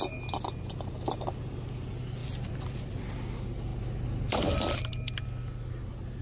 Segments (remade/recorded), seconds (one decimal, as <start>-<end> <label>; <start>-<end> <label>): 0.0-2.2 recorded; 2.2-3.0 remade; 3.0-6.2 recorded